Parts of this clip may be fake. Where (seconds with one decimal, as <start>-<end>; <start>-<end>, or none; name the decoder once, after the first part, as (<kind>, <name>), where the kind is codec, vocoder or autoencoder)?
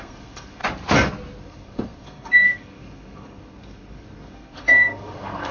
0.0-0.6 (codec, SNAC); 1.4-5.5